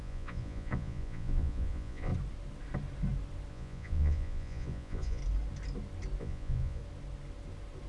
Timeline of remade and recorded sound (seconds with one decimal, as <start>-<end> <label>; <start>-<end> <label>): 0.0-2.1 remade; 2.1-3.5 recorded; 3.5-5.2 remade; 5.2-6.2 recorded; 6.2-6.8 remade; 6.8-7.9 recorded